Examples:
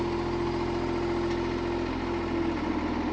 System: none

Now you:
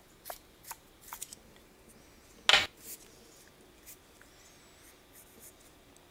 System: none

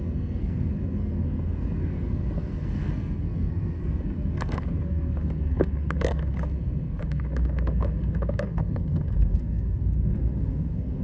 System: codec, SNAC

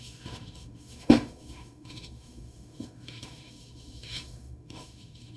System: autoencoder, DAC-VAE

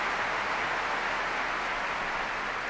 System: none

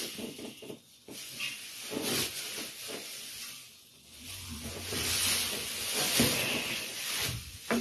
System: vocoder, Vocos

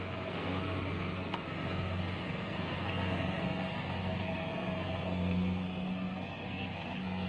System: codec, SNAC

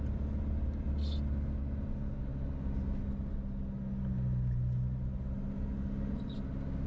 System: none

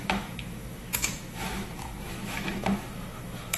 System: autoencoder, DAC-VAE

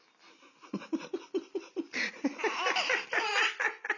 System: none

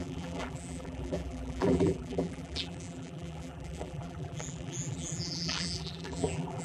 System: vocoder, BigVGAN v2